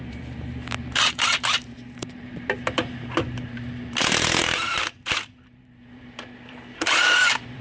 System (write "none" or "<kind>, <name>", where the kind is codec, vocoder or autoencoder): vocoder, BigVGAN v2